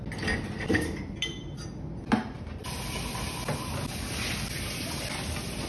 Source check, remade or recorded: recorded